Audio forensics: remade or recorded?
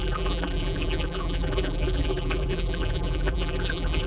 remade